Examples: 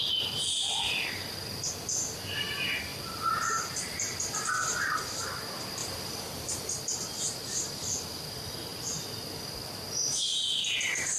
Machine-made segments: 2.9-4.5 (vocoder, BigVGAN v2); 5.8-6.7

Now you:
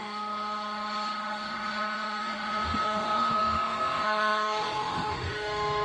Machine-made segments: 0.0-5.8 (autoencoder, DAC-VAE)

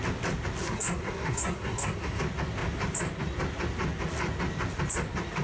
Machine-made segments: 0.6-2.2 (codec, SNAC)

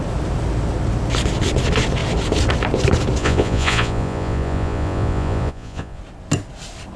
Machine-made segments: 3.2-6.0 (vocoder, Vocos)

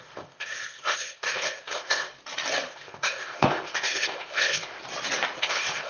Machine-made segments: 0.0-2.1 (codec, ZipCodec); 2.7-4.8; 5.4-5.9

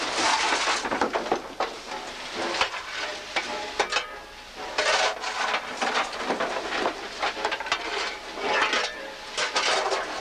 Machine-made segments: none